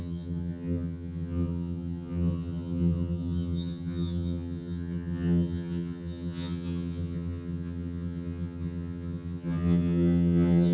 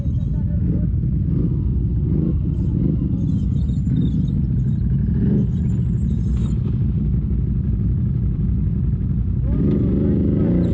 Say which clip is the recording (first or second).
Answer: second